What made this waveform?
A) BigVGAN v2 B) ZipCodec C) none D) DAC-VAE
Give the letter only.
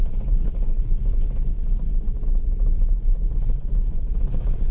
C